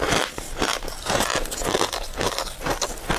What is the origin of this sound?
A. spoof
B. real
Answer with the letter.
B